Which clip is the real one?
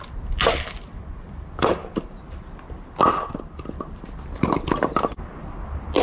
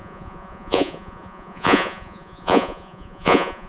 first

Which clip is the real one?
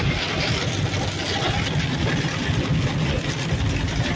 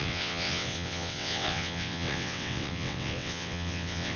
first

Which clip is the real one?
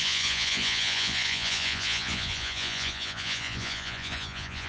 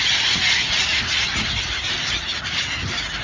second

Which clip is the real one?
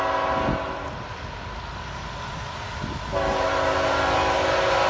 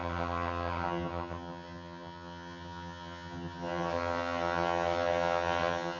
first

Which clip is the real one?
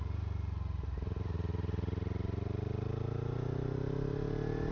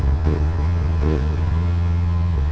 first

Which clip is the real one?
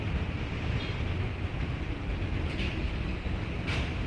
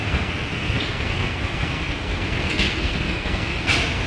first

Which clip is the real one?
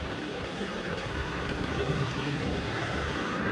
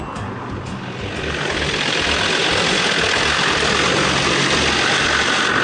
second